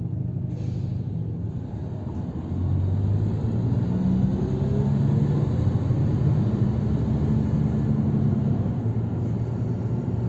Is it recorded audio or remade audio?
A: recorded